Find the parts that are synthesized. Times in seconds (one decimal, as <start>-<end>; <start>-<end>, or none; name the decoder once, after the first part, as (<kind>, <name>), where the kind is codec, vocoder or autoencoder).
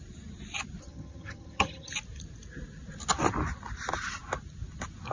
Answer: 0.8-1.9 (vocoder, HiFi-GAN)